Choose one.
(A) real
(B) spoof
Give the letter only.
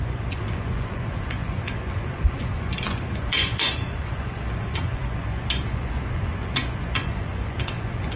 B